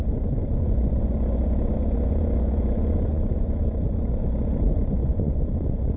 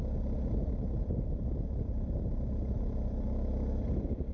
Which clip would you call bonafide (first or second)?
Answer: second